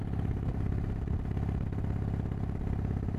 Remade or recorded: recorded